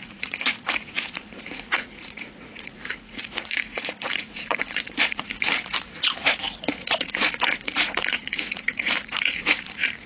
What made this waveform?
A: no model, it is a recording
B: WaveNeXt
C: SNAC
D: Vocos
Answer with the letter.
D